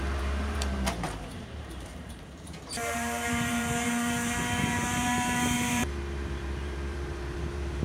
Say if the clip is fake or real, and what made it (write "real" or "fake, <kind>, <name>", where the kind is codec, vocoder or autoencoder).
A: fake, vocoder, BigVGAN v2